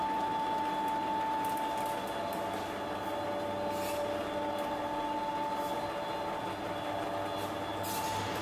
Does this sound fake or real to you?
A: real